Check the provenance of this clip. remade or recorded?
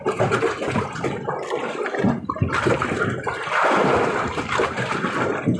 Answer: recorded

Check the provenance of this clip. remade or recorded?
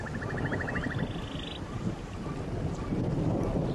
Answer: recorded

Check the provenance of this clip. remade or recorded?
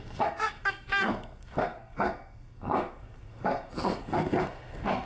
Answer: remade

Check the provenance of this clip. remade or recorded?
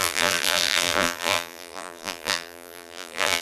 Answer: remade